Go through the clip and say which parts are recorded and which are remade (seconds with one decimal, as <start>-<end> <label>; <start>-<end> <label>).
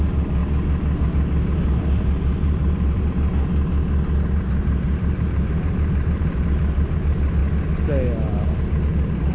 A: 0.0-0.4 remade; 0.4-1.0 recorded; 1.0-3.5 remade; 3.5-4.4 recorded; 4.4-7.4 remade; 7.4-8.8 recorded; 8.8-9.3 remade